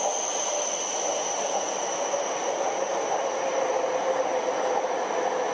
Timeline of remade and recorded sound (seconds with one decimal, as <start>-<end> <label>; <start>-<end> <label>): 0.0-2.4 recorded; 2.4-3.3 remade; 3.3-5.5 recorded